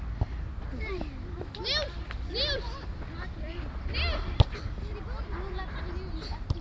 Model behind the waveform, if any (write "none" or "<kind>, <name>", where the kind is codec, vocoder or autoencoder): none